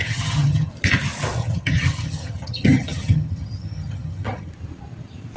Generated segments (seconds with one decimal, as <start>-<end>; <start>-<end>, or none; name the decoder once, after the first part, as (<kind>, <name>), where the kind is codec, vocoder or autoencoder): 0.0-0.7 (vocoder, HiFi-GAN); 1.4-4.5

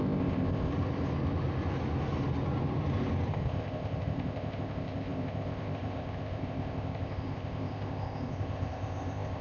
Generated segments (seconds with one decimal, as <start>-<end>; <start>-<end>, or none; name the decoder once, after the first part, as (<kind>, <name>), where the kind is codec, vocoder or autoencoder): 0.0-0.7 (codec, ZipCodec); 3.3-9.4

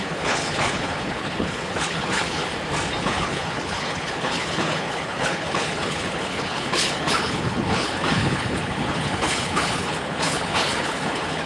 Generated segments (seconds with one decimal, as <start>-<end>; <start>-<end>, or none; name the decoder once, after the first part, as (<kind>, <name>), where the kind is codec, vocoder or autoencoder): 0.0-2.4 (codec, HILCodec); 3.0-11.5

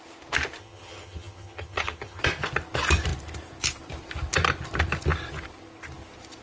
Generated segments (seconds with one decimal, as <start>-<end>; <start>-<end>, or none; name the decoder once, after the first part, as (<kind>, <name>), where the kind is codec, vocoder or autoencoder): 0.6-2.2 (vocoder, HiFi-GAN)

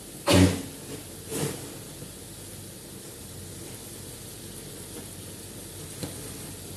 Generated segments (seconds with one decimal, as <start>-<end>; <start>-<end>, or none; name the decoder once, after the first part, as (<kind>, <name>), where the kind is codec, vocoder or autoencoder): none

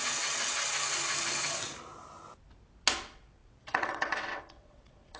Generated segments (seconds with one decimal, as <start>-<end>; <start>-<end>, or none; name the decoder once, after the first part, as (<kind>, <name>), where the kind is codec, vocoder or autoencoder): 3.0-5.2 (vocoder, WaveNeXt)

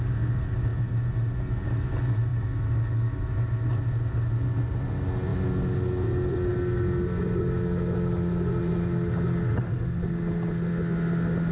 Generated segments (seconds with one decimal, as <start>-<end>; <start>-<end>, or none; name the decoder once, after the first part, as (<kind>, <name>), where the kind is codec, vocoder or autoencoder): none